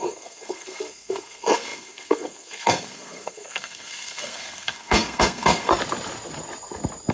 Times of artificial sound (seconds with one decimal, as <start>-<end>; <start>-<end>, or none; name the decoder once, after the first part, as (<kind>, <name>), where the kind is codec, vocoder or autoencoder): 0.0-5.7 (codec, SNAC)